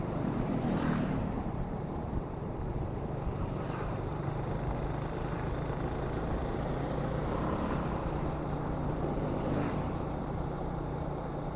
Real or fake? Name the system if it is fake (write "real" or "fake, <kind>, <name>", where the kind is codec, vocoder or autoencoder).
fake, vocoder, BigVGAN v2